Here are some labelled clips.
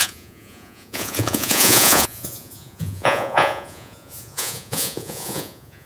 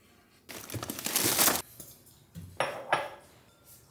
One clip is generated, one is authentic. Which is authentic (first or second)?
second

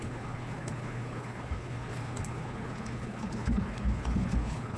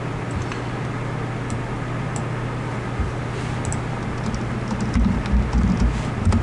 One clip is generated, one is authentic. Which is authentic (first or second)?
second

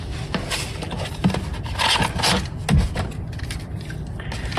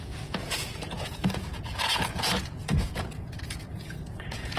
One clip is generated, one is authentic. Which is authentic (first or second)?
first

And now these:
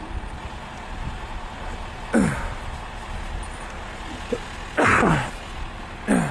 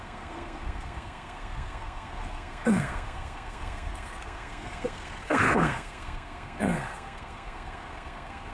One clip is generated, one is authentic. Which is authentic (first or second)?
first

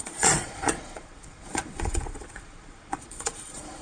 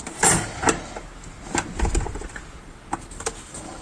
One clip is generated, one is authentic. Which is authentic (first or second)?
second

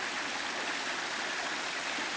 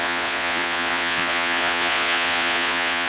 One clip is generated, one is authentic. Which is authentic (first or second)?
first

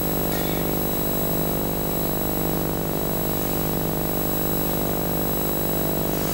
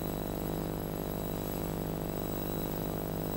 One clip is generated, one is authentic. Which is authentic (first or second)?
first